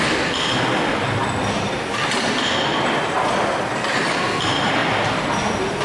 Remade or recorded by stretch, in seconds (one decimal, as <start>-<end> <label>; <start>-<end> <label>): 0.0-5.8 recorded